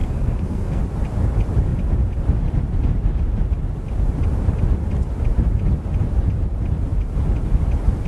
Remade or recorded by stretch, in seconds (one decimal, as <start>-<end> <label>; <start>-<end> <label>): 0.0-0.8 remade; 0.8-8.1 recorded